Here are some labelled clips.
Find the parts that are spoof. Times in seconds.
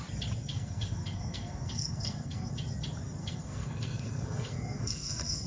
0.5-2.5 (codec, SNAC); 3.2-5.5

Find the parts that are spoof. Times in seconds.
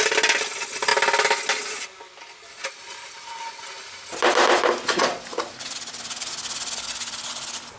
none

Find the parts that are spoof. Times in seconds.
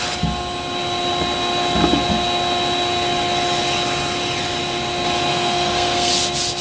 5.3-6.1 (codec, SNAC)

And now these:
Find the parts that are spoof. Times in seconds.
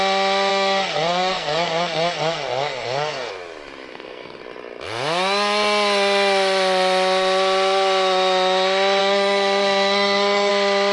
0.5-3.3 (codec, SNAC); 3.9-4.4; 9.0-10.5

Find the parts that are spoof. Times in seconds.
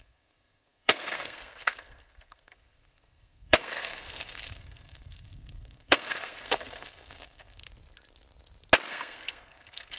0.0-7.6 (codec, SNAC); 8.9-10.0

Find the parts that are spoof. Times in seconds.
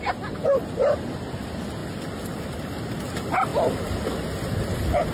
none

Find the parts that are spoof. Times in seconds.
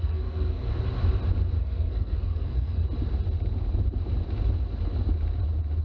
0.0-0.7 (codec, SNAC); 1.6-2.8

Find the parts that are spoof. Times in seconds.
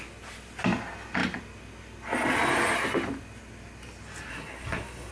4.3-5.1 (codec, SNAC)